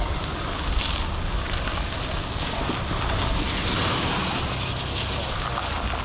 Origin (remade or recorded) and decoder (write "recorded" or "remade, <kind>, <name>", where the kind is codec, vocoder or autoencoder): recorded